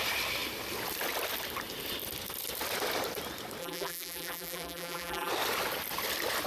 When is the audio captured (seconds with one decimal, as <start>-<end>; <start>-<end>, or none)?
0.0-3.6; 5.3-6.5